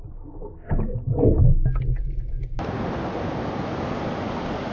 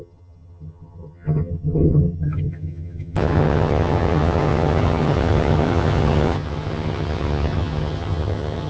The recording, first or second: first